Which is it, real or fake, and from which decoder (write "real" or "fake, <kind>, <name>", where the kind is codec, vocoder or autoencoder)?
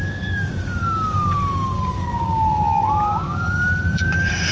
fake, codec, DAC